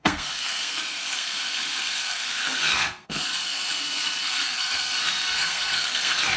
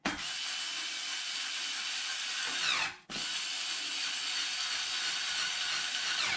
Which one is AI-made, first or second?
first